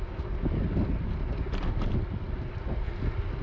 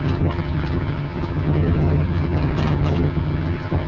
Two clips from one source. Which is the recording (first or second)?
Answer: first